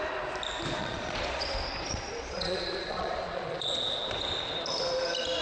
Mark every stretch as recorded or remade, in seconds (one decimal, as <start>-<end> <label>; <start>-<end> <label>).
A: 0.0-0.8 recorded; 0.8-4.0 remade; 4.0-5.4 recorded